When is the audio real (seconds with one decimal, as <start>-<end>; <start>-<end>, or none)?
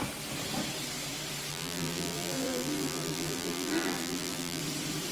0.0-1.5; 4.6-5.1